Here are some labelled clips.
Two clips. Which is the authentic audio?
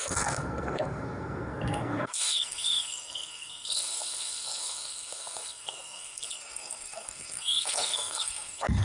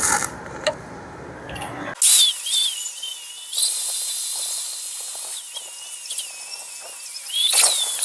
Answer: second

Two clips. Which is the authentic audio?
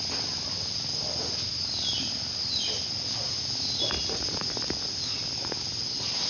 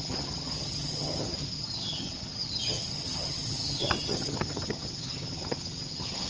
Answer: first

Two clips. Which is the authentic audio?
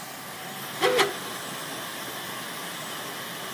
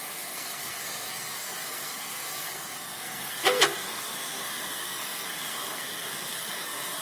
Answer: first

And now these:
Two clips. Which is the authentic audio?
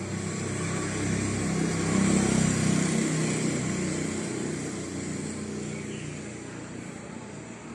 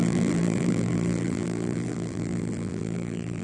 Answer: first